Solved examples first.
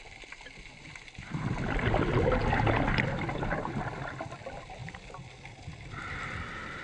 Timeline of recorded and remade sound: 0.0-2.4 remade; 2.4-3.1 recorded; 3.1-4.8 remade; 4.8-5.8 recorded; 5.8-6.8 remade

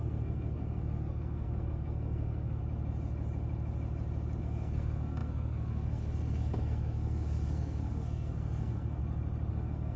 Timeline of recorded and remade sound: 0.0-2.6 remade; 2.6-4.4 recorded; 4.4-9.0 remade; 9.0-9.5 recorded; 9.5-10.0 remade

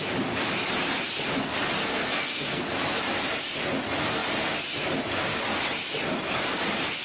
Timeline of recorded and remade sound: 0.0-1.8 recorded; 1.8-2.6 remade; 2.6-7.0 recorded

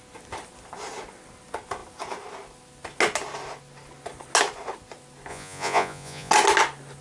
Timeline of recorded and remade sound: 0.0-5.3 recorded; 5.3-6.3 remade; 6.3-7.0 recorded

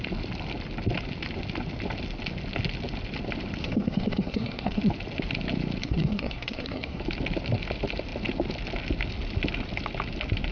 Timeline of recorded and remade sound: 0.0-3.6 recorded; 3.6-4.8 remade; 4.8-5.8 recorded; 5.8-7.0 remade; 7.0-10.5 recorded

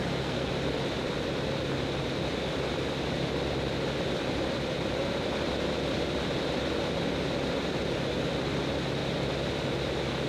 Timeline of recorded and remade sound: 0.0-0.5 remade; 0.5-10.3 recorded